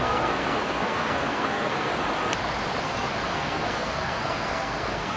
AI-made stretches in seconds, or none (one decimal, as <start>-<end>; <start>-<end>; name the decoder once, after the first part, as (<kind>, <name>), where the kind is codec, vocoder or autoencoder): 0.0-1.9 (codec, SNAC); 2.8-5.2